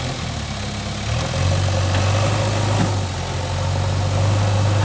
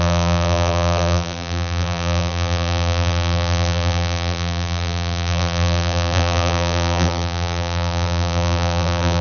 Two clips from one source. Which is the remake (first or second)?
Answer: second